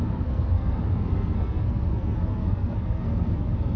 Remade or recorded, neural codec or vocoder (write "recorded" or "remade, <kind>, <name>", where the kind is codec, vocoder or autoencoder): remade, codec, SNAC